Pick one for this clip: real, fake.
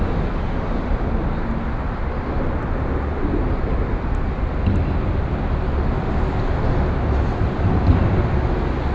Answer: real